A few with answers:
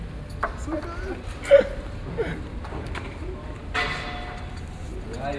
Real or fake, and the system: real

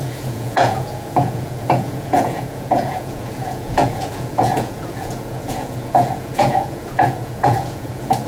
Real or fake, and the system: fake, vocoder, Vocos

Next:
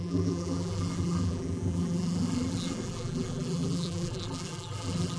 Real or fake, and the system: fake, vocoder, BigVGAN v2